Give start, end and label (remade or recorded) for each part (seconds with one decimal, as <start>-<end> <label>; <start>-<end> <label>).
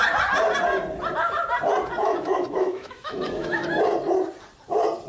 0.0-2.0 recorded; 2.0-3.6 remade; 3.6-5.1 recorded